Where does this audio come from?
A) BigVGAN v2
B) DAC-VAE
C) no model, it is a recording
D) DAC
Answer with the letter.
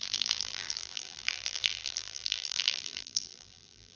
A